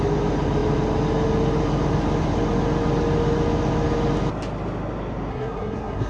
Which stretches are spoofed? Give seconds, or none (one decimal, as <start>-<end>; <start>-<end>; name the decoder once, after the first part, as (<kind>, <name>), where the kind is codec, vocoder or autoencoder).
5.3-6.1 (codec, SNAC)